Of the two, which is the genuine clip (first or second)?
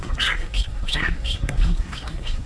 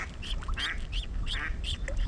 second